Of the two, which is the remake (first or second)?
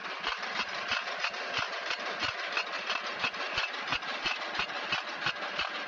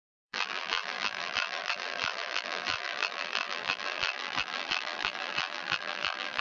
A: second